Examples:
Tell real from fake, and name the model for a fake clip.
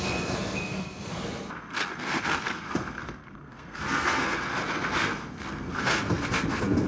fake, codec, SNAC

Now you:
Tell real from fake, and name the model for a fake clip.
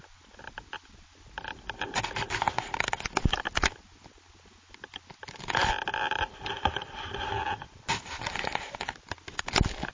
real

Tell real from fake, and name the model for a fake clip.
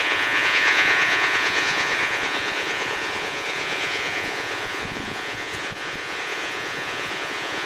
fake, vocoder, Vocos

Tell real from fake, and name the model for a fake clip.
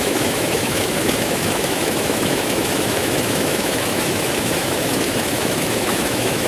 fake, autoencoder, DAC-VAE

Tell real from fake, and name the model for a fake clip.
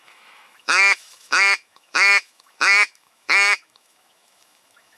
fake, autoencoder, DAC-VAE